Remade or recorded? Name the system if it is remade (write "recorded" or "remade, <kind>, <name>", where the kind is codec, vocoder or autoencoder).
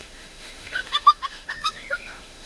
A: remade, autoencoder, DAC-VAE